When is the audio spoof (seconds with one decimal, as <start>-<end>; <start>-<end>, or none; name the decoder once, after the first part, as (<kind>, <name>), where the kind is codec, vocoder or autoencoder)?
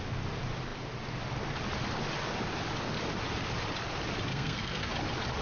4.3-4.9 (codec, SNAC)